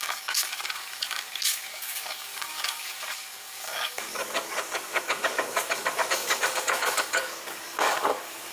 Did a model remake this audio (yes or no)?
yes